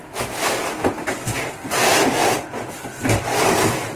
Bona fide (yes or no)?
yes